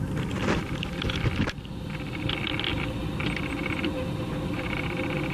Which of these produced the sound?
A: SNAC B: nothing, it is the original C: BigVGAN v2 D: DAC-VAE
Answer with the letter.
B